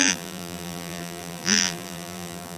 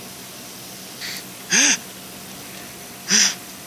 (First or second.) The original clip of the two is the second